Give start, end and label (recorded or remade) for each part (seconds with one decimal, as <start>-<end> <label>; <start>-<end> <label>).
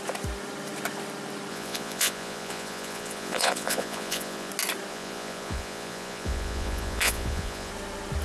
0.0-1.5 recorded; 1.5-4.5 remade; 4.5-4.9 recorded; 4.9-7.7 remade; 7.7-8.2 recorded